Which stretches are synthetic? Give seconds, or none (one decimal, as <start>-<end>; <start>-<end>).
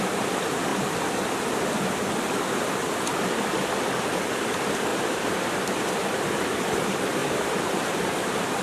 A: 4.9-6.0; 7.2-8.6